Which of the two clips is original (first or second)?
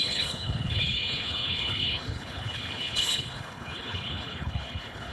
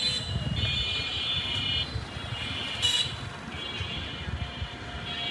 second